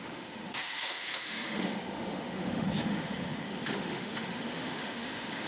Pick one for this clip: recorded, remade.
remade